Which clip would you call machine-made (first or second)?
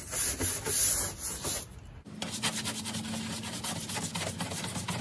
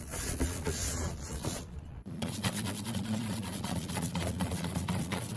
second